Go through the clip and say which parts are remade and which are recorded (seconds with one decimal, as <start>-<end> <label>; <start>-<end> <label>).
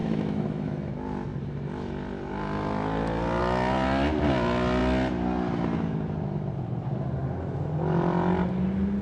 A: 0.0-0.9 remade; 0.9-9.0 recorded